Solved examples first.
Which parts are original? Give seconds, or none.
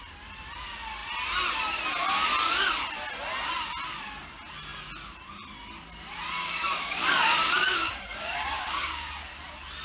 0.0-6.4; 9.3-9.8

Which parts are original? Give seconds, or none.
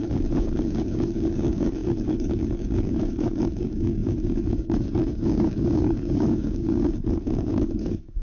none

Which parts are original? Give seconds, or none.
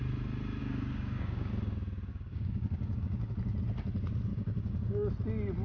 0.0-0.6; 1.5-2.1; 3.3-4.3; 5.1-5.6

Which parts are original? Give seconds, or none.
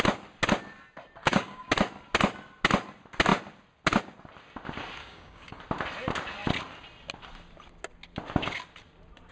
0.0-1.2; 1.7-5.0; 5.6-9.3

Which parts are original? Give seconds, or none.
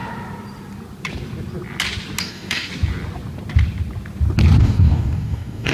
0.0-2.2; 2.7-4.6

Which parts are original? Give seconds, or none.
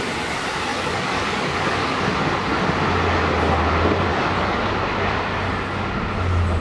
0.0-0.7; 2.0-4.1; 4.7-6.6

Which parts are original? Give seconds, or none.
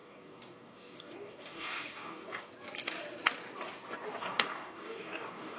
2.5-4.2